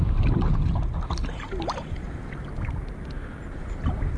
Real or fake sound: real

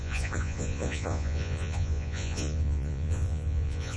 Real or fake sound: fake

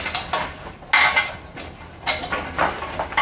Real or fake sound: real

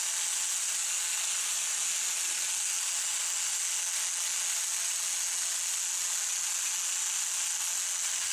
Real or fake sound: real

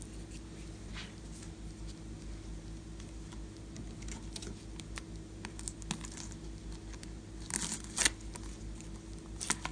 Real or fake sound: real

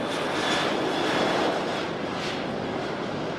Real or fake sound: real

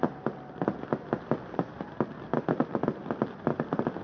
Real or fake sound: real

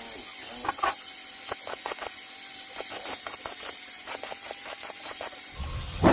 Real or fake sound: real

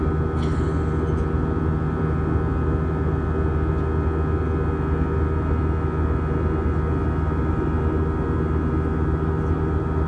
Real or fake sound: real